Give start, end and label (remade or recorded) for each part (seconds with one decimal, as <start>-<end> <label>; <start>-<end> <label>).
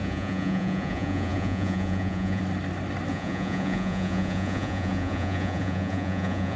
0.0-2.4 remade; 2.4-3.1 recorded; 3.1-6.6 remade